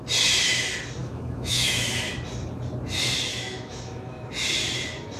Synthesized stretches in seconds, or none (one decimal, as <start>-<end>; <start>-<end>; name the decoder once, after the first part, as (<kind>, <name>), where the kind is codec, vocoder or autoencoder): 1.0-2.1 (autoencoder, DAC-VAE); 3.3-4.3